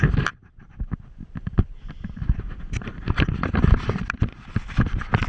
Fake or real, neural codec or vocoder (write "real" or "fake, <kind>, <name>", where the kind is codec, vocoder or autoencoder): fake, vocoder, BigVGAN v2